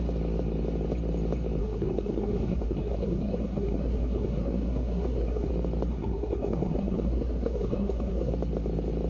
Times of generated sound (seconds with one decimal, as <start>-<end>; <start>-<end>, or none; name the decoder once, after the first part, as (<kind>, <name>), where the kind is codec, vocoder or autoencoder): 1.6-5.5 (codec, SNAC); 5.9-8.3